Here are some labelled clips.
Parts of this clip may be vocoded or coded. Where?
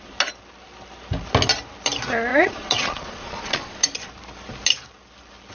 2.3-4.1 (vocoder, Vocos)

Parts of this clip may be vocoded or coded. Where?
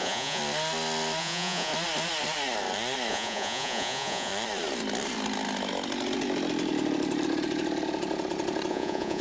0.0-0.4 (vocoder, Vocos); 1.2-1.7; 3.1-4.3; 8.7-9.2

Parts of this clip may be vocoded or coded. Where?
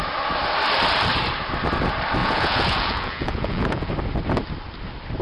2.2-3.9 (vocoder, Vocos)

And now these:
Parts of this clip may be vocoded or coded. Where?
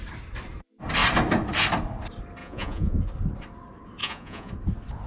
2.4-3.0 (vocoder, Vocos); 4.0-4.5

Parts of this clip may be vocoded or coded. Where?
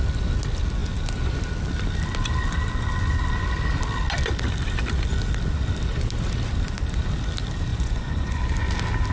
7.7-8.4 (vocoder, Vocos)